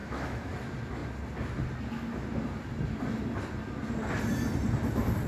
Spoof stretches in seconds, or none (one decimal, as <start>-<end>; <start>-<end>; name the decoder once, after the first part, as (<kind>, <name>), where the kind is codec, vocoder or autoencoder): 0.0-0.5 (autoencoder, DAC-VAE)